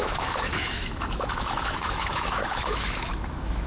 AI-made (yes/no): yes